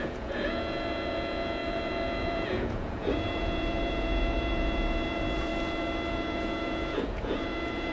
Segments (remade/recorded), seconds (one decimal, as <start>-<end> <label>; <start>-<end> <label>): 0.0-5.5 remade; 5.5-6.1 recorded; 6.1-7.9 remade